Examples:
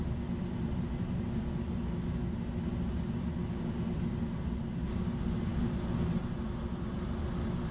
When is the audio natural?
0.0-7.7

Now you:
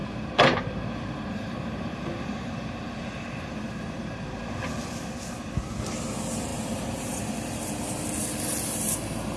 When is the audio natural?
5.1-6.5; 7.7-9.4

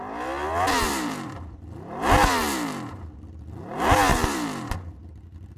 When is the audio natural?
0.0-0.8; 1.6-4.1; 4.9-5.6